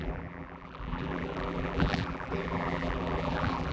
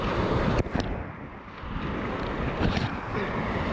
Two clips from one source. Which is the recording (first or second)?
second